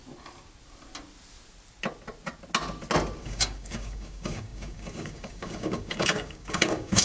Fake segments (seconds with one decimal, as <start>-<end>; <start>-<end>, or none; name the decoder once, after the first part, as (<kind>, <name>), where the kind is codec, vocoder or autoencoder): 3.2-7.0 (codec, DAC)